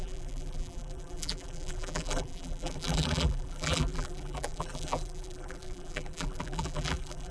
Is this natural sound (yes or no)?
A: no